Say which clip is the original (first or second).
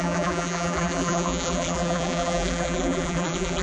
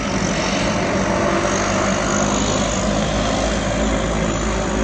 second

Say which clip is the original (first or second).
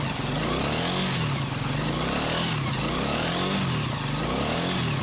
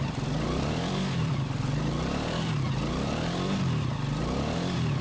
first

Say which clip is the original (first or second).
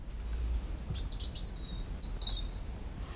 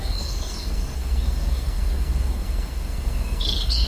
first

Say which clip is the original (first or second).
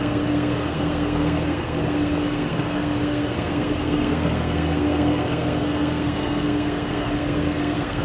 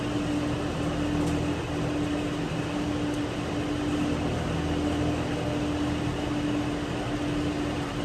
second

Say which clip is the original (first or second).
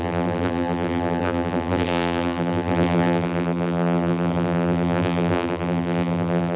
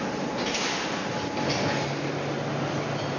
second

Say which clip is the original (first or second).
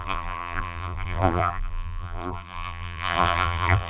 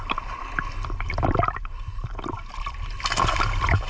second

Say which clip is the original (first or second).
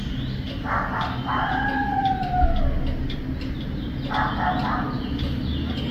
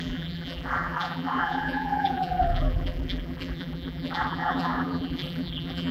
first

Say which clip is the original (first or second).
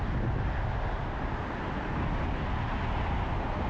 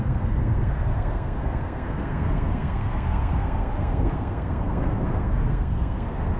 first